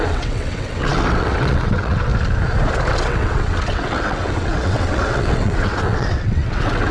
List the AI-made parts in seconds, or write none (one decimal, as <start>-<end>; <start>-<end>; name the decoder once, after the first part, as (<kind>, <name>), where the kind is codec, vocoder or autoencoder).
0.0-2.1 (vocoder, WaveNeXt); 2.9-6.9